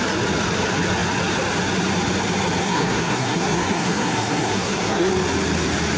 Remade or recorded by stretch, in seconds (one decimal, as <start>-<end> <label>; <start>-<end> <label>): 0.0-2.6 recorded; 2.6-5.1 remade; 5.1-6.0 recorded